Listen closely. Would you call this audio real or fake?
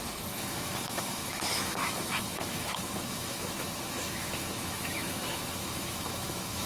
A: fake